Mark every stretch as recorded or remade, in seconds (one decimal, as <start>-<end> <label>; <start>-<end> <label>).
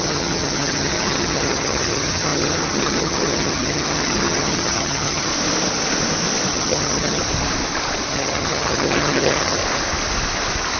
0.0-5.3 remade; 5.3-6.5 recorded; 6.5-7.2 remade; 7.2-8.1 recorded; 8.1-9.6 remade; 9.6-10.8 recorded